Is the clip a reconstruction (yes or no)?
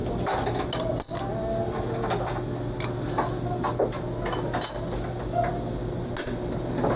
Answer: no